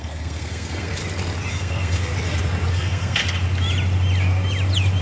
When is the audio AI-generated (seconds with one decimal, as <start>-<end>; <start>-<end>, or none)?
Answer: 0.0-1.0; 1.5-2.1; 2.7-3.2